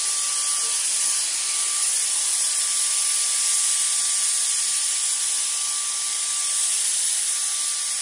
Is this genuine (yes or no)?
yes